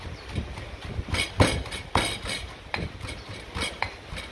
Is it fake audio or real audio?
real